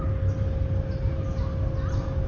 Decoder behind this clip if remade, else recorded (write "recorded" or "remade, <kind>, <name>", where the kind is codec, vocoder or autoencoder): recorded